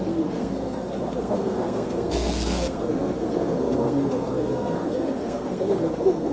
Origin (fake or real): fake